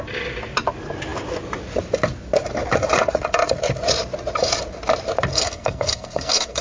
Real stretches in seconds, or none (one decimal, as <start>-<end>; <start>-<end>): 0.0-5.3